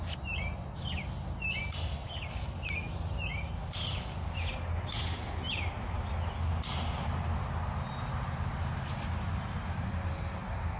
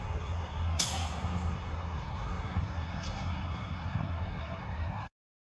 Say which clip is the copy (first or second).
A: second